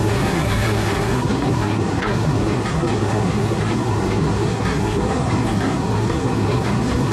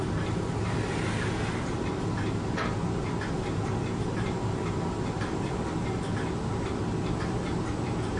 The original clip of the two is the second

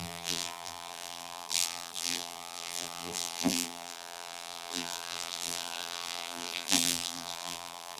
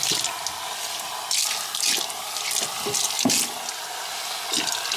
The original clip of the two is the second